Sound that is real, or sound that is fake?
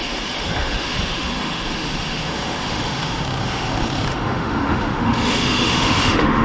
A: fake